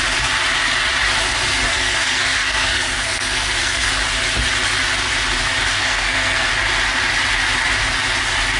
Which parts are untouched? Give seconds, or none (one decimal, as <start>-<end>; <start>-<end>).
0.0-1.7; 3.9-5.7; 6.5-8.6